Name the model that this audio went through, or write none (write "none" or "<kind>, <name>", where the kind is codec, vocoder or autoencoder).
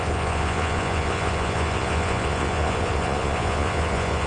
vocoder, Vocos